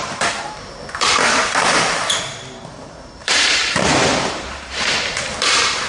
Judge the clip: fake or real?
fake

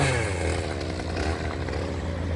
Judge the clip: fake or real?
real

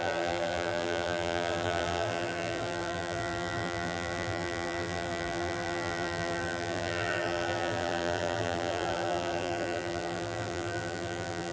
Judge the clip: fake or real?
fake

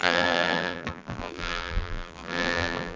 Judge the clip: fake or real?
fake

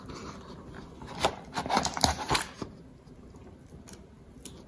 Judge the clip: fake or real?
real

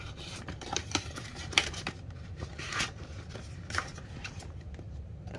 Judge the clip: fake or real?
fake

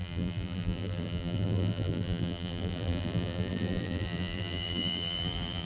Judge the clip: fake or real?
fake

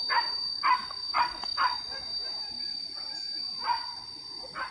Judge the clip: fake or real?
real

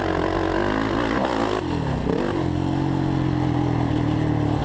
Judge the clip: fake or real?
real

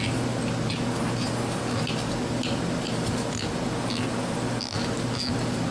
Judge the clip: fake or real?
real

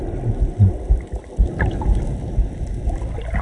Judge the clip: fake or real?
real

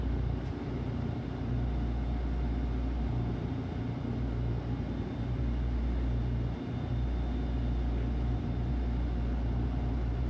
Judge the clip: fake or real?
real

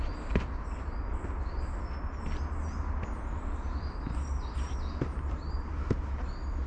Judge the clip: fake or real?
real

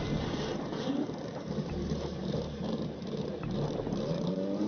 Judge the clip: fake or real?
fake